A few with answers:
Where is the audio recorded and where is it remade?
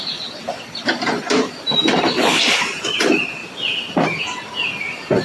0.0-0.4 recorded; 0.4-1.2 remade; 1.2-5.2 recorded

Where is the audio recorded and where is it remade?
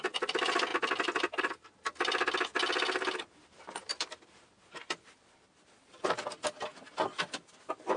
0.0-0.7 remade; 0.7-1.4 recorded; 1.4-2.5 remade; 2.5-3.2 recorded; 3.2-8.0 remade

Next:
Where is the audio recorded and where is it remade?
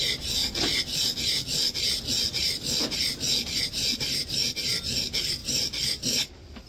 0.0-5.4 recorded; 5.4-6.3 remade; 6.3-6.7 recorded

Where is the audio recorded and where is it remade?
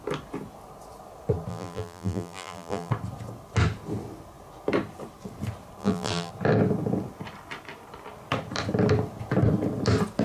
0.0-1.5 recorded; 1.5-2.9 remade; 2.9-5.8 recorded; 5.8-6.3 remade; 6.3-10.2 recorded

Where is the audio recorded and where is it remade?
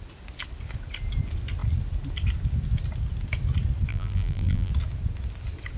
0.0-3.9 recorded; 3.9-4.7 remade; 4.7-5.8 recorded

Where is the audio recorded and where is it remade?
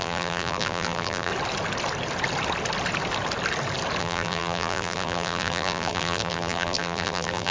0.0-1.3 remade; 1.3-4.0 recorded; 4.0-7.5 remade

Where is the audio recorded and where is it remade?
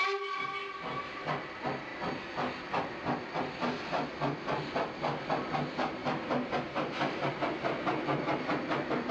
0.0-6.0 recorded; 6.0-7.3 remade; 7.3-9.1 recorded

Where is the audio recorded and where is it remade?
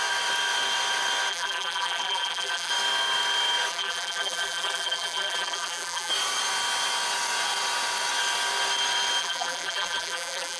0.0-1.3 recorded; 1.3-2.7 remade; 2.7-3.7 recorded; 3.7-6.1 remade; 6.1-9.2 recorded; 9.2-10.6 remade